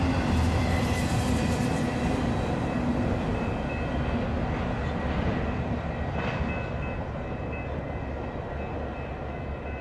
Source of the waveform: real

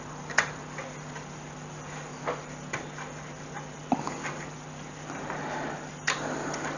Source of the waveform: real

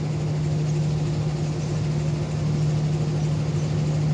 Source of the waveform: real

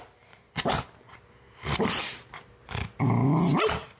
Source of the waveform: real